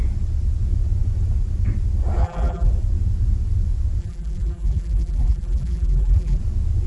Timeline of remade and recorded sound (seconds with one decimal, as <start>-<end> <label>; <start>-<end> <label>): 0.0-2.2 recorded; 2.2-2.7 remade; 2.7-4.0 recorded; 4.0-6.4 remade; 6.4-6.9 recorded